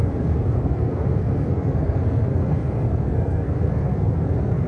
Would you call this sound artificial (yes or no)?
yes